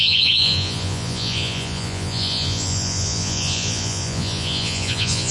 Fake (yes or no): yes